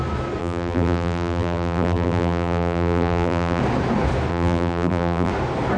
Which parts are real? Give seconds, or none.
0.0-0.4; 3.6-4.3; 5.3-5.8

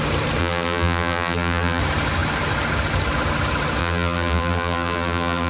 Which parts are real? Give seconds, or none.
0.0-0.4; 1.8-3.8

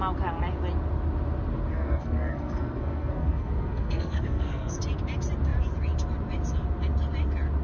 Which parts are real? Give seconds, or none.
0.0-1.7; 4.7-7.6

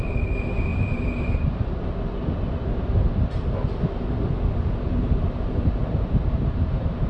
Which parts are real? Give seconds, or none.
0.0-5.8

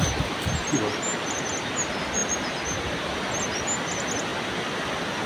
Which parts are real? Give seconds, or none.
0.0-5.3

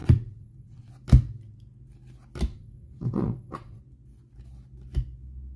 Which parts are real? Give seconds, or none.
0.9-2.5; 3.8-5.6

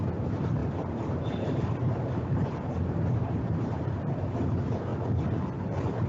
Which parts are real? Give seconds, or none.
4.9-5.6

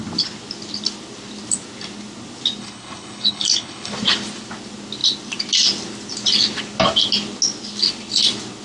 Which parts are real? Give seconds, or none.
0.0-2.6; 3.9-8.6